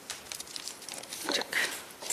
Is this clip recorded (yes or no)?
no